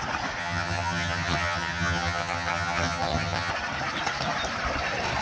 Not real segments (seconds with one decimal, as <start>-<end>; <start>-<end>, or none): 0.4-3.5